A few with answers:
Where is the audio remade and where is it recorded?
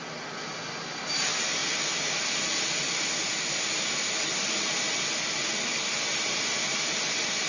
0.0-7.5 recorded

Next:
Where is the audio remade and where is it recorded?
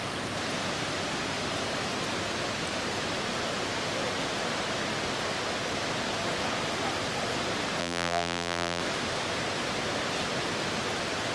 0.0-7.8 recorded; 7.8-8.8 remade; 8.8-11.3 recorded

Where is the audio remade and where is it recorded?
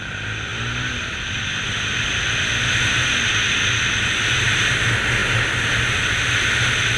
0.0-7.0 recorded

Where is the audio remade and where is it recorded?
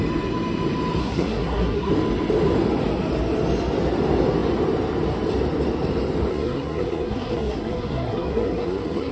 0.0-1.0 recorded; 1.0-1.9 remade; 1.9-6.3 recorded; 6.3-9.1 remade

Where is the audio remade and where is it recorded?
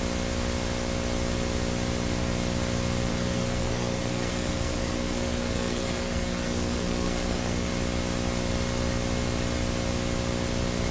0.0-3.1 recorded; 3.1-7.7 remade; 7.7-10.9 recorded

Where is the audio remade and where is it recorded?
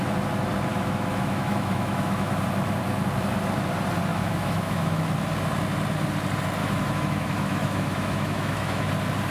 0.0-0.7 recorded; 0.7-2.4 remade; 2.4-4.1 recorded; 4.1-5.0 remade; 5.0-6.6 recorded; 6.6-8.9 remade; 8.9-9.3 recorded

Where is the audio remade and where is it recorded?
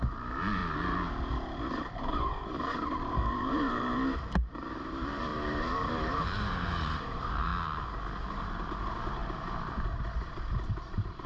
0.0-0.6 remade; 0.6-1.8 recorded; 1.8-7.5 remade; 7.5-8.3 recorded; 8.3-11.3 remade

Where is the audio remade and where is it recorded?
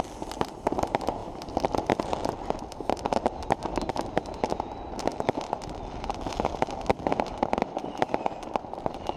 0.0-9.2 recorded